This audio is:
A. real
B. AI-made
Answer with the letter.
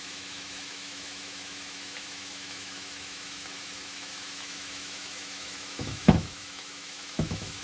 B